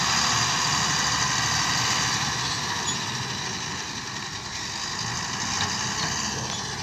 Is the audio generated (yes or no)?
no